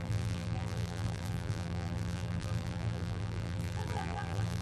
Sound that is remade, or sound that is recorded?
remade